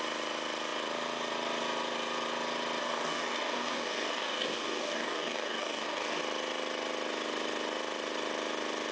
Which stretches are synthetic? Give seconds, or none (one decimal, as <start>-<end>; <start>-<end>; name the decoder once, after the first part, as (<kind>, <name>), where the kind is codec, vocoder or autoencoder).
2.8-6.2 (codec, DAC)